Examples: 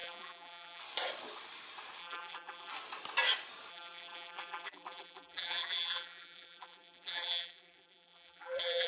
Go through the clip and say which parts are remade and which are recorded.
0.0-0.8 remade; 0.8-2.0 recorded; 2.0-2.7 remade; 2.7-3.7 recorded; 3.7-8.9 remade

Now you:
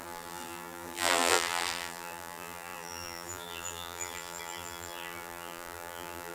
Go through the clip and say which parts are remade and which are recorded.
0.0-6.3 remade

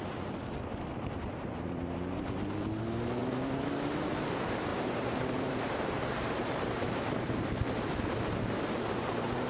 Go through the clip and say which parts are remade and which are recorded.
0.0-0.7 recorded; 0.7-2.8 remade; 2.8-4.7 recorded; 4.7-7.5 remade; 7.5-9.5 recorded

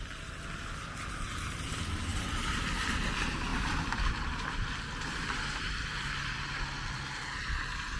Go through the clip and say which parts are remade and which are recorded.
0.0-3.5 recorded; 3.5-6.1 remade; 6.1-8.0 recorded

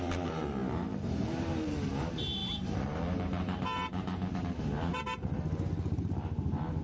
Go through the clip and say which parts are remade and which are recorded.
0.0-6.8 remade

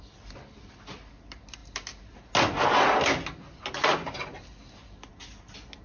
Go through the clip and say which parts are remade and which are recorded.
0.0-5.8 recorded

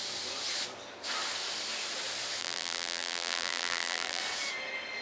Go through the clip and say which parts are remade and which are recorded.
0.0-2.4 recorded; 2.4-4.2 remade; 4.2-5.0 recorded

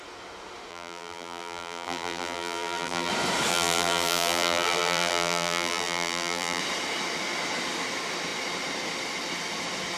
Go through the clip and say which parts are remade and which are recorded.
0.0-0.7 recorded; 0.7-3.1 remade; 3.1-3.5 recorded; 3.5-6.6 remade; 6.6-10.0 recorded